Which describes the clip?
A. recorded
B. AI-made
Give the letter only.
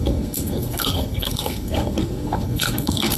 B